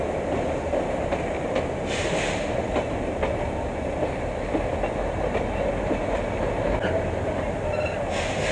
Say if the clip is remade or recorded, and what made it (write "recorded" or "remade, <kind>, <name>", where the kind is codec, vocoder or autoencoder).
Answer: recorded